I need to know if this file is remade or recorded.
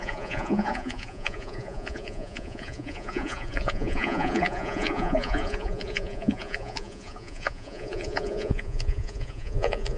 remade